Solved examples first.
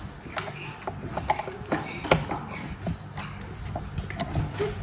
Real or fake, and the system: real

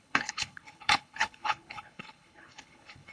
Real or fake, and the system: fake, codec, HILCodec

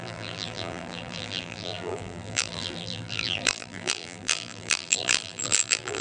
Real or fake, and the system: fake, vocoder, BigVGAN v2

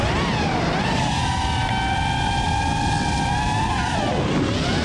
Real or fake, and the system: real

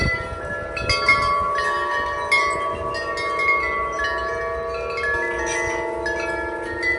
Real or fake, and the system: real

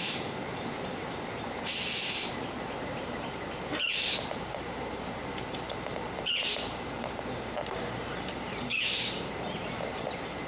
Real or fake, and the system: fake, vocoder, BigVGAN v2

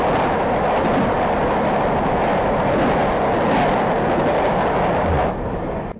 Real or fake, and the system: real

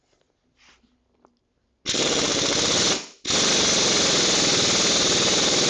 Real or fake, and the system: real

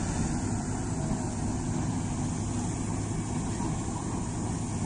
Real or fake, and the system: real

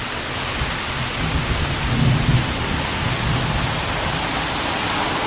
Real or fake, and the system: real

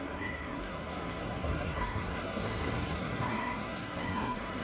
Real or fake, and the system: fake, codec, SNAC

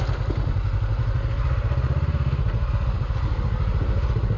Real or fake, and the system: real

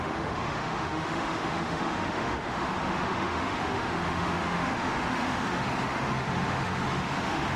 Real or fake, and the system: fake, autoencoder, DAC-VAE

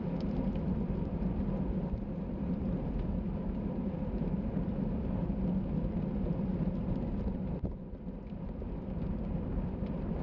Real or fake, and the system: real